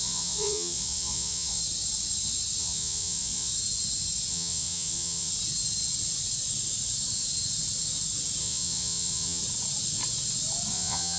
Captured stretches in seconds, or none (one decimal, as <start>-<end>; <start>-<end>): 1.6-2.6; 3.5-4.3; 5.3-8.4; 9.4-10.7